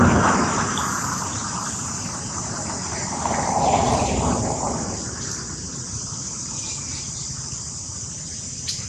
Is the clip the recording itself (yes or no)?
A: no